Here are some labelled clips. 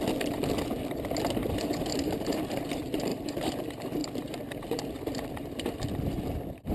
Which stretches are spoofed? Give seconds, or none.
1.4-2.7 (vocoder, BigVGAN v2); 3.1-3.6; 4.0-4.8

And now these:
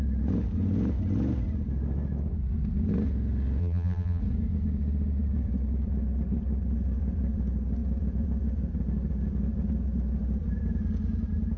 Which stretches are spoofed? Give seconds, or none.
3.6-4.2 (vocoder, BigVGAN v2)

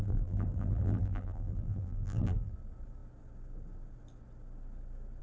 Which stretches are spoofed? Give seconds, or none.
0.0-2.5 (vocoder, BigVGAN v2)

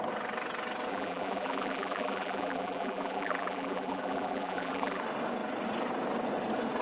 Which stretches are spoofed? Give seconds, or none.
0.9-5.0 (vocoder, BigVGAN v2)

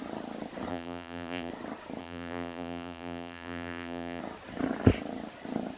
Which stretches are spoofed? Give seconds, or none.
0.7-1.5 (vocoder, BigVGAN v2); 2.0-4.2

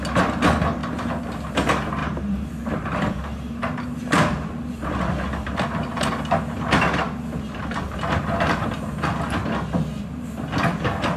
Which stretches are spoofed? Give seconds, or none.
0.8-1.5 (vocoder, BigVGAN v2); 2.0-6.1